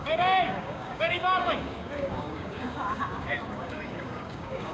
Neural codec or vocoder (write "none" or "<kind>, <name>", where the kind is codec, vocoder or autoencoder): codec, DAC